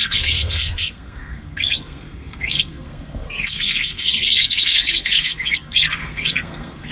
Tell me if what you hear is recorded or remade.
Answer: remade